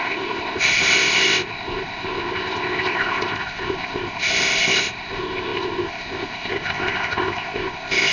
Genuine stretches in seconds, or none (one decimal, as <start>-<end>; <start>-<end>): none